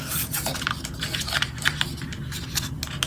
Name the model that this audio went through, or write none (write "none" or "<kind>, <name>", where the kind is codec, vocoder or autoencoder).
none